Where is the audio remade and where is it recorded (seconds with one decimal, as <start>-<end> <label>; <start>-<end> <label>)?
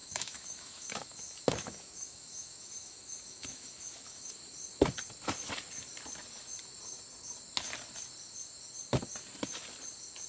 0.0-4.3 remade; 4.3-10.3 recorded